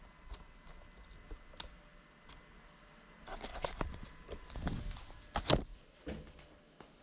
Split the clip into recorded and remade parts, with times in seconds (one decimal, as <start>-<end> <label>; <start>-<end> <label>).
0.0-3.5 recorded; 3.5-4.8 remade; 4.8-7.0 recorded